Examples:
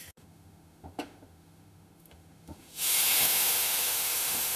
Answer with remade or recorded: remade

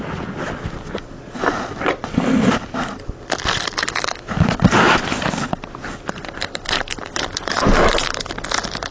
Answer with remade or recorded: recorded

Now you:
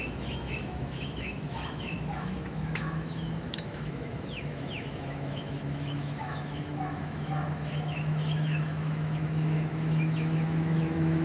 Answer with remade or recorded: remade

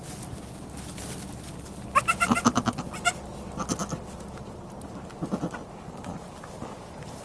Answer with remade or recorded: recorded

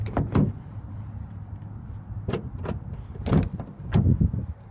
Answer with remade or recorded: recorded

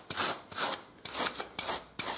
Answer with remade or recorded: recorded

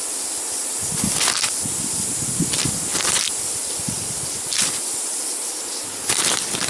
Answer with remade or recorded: remade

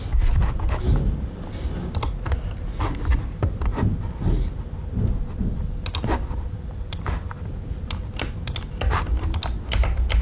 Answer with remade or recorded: recorded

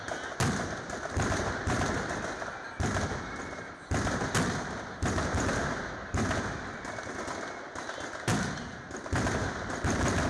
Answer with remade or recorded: recorded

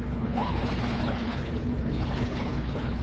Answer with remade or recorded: remade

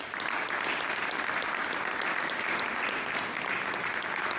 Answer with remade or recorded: recorded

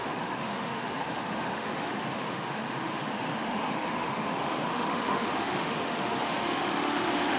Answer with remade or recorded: remade